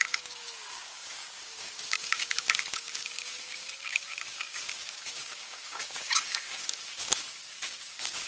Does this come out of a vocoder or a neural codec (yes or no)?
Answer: yes